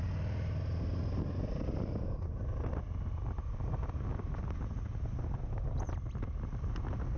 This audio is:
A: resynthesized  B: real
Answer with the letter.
B